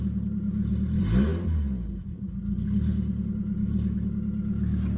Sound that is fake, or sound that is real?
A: real